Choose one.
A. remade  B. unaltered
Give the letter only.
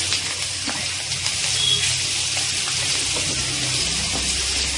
B